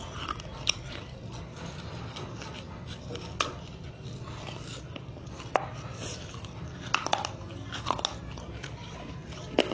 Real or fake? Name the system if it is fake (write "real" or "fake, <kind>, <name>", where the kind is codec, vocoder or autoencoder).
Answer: real